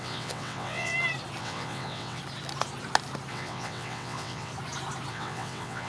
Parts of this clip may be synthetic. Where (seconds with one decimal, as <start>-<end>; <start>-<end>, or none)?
0.0-0.9; 1.4-2.2; 3.3-4.5; 5.1-5.9